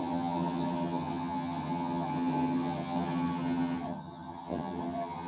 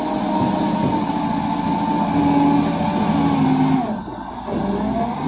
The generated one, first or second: first